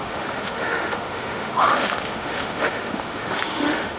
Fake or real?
fake